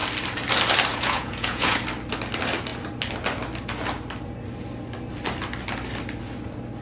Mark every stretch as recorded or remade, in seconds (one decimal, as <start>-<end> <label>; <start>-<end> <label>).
0.0-0.9 recorded; 0.9-1.8 remade; 1.8-6.8 recorded